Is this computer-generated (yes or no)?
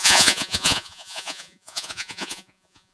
yes